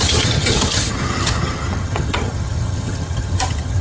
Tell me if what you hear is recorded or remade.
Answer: remade